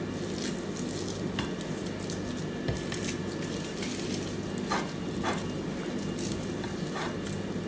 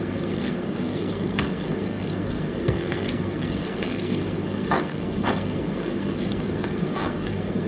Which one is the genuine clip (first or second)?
first